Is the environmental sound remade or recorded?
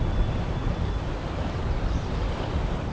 recorded